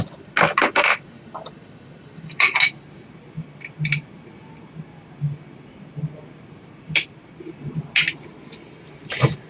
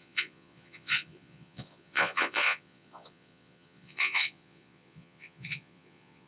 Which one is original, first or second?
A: first